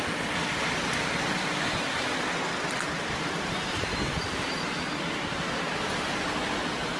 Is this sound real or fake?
real